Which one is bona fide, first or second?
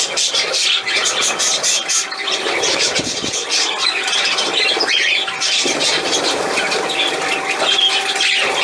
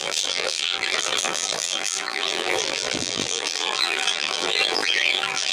first